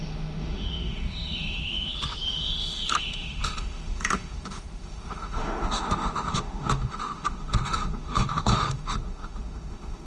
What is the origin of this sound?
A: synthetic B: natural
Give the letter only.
A